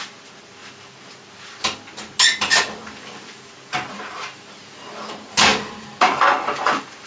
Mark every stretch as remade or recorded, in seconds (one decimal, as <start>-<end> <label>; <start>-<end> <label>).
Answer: 0.0-5.5 recorded; 5.5-6.1 remade; 6.1-7.1 recorded